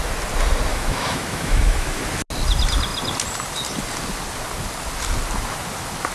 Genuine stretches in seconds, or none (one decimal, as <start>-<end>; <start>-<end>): 0.0-0.7; 2.0-6.1